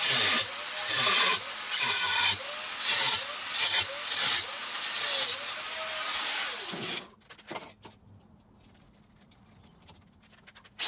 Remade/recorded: recorded